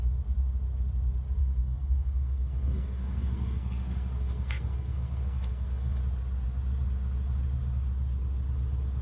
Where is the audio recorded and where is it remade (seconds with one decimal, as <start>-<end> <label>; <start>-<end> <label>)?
0.0-1.4 recorded; 1.4-6.0 remade; 6.0-9.0 recorded

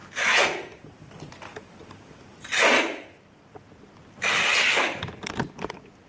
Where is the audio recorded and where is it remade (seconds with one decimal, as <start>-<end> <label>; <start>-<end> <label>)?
0.0-6.1 recorded

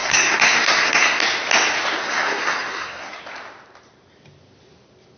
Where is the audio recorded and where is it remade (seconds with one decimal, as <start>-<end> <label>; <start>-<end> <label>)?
0.0-1.2 remade; 1.2-2.0 recorded; 2.0-3.2 remade; 3.2-5.2 recorded